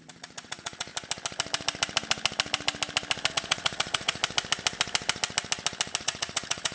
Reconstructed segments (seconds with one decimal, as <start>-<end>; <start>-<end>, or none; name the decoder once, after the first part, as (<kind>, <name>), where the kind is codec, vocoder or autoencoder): 0.0-0.9 (vocoder, Vocos); 3.3-4.2; 6.0-6.7